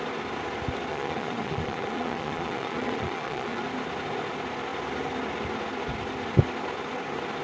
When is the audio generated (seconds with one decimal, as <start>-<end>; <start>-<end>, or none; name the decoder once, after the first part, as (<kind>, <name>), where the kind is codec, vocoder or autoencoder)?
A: 0.9-3.6 (vocoder, Vocos)